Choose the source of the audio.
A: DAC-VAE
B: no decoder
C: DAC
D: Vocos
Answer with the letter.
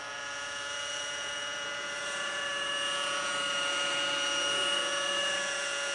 D